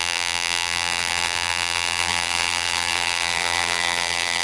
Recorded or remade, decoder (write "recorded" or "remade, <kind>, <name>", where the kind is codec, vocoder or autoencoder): remade, vocoder, BigVGAN v2